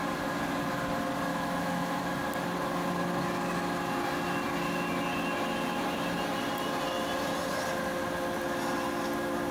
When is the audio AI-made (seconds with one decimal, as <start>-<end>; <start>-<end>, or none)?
1.3-2.1